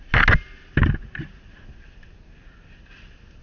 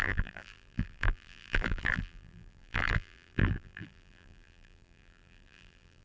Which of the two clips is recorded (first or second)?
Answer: first